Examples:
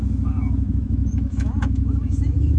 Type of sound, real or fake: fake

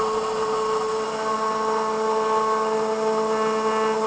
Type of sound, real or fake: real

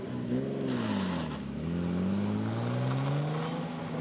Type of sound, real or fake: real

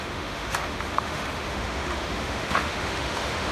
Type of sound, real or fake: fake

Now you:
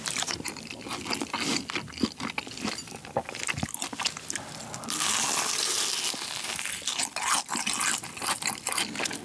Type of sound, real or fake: real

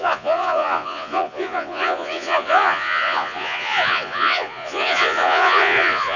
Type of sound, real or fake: fake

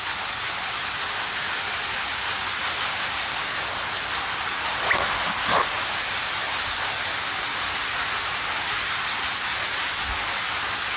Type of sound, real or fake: real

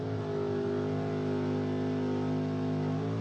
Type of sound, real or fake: real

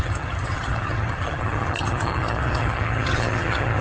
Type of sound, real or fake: fake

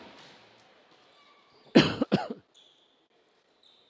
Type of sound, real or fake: real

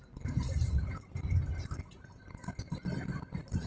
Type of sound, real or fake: real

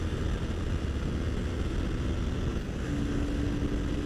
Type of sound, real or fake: real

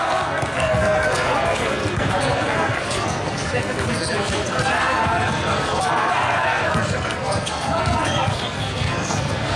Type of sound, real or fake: fake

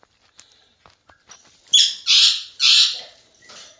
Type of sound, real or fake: real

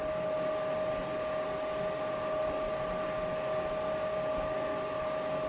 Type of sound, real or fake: real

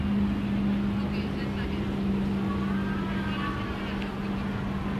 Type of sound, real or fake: real